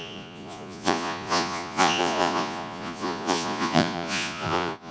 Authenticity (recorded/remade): remade